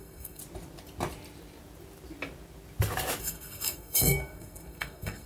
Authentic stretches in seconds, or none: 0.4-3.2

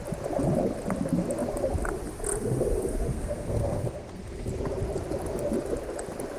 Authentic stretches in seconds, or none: 0.0-3.1; 4.5-6.4

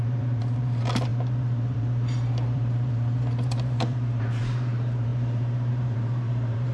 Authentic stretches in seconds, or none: none